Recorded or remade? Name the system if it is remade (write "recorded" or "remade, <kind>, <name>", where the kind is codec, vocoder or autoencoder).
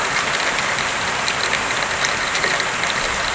recorded